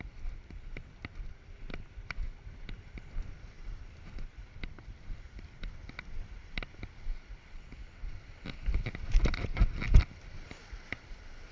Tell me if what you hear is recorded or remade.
recorded